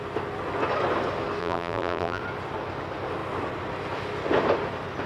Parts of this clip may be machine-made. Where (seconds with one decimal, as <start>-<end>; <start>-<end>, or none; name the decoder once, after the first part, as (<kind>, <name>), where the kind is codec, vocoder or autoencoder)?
1.4-2.2 (vocoder, BigVGAN v2)